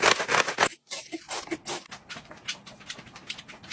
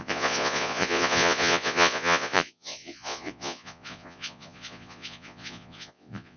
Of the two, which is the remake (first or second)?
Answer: second